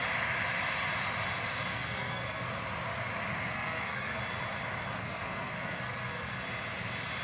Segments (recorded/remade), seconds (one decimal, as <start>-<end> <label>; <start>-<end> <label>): 0.0-1.7 recorded; 1.7-2.5 remade; 2.5-3.3 recorded; 3.3-4.2 remade; 4.2-5.0 recorded; 5.0-6.4 remade; 6.4-7.2 recorded

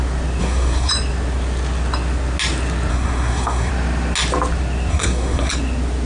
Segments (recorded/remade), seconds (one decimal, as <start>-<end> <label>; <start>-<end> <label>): 0.0-0.4 recorded; 0.4-0.9 remade; 0.9-2.9 recorded; 2.9-3.7 remade; 3.7-4.9 recorded; 4.9-5.5 remade; 5.5-6.1 recorded

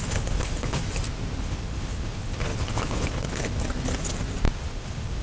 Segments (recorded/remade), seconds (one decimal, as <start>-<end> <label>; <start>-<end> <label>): 0.0-0.8 remade; 0.8-1.4 recorded; 1.4-3.6 remade; 3.6-4.6 recorded; 4.6-5.2 remade

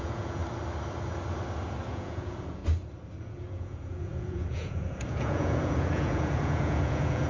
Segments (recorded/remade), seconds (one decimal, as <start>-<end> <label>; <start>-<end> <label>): 0.0-0.4 remade; 0.4-1.9 recorded; 1.9-2.6 remade; 2.6-3.2 recorded; 3.2-7.3 remade

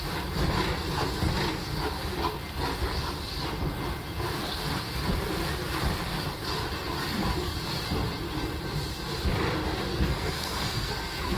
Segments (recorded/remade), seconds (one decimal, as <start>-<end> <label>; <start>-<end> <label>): 0.0-9.9 recorded; 9.9-11.4 remade

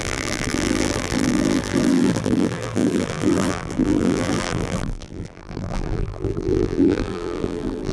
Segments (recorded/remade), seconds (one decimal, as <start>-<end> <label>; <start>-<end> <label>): 0.0-7.9 remade